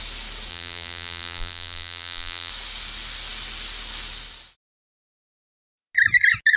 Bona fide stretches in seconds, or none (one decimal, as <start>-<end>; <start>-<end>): 0.0-0.5; 2.5-6.6